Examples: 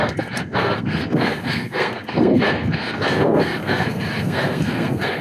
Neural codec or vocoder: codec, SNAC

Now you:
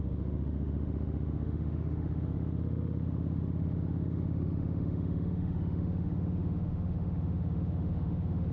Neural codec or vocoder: autoencoder, DAC-VAE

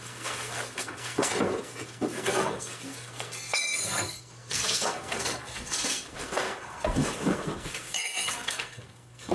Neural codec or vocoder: codec, SNAC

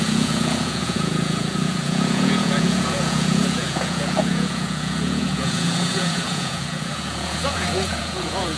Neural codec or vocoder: vocoder, Vocos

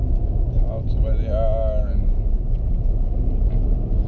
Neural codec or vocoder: none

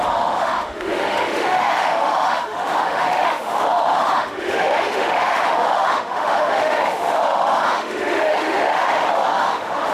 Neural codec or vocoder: autoencoder, DAC-VAE